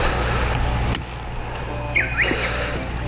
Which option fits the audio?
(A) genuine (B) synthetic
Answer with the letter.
A